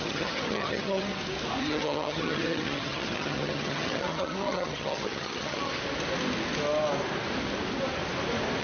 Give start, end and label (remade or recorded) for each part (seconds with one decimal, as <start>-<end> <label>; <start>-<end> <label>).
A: 0.0-1.1 remade; 1.1-1.6 recorded; 1.6-5.7 remade; 5.7-8.6 recorded